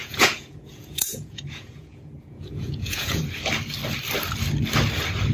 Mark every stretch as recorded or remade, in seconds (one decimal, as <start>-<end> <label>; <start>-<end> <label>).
0.0-3.2 remade; 3.2-5.3 recorded